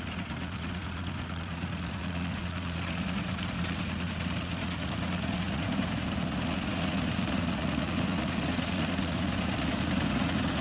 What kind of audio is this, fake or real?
fake